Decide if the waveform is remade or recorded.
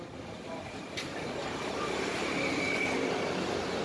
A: recorded